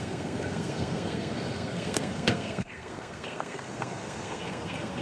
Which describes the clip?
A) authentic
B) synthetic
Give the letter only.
B